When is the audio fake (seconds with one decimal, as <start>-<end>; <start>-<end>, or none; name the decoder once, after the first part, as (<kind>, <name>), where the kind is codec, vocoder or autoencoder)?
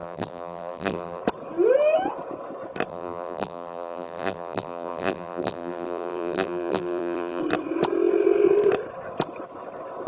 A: 0.0-1.2 (vocoder, BigVGAN v2); 2.9-7.4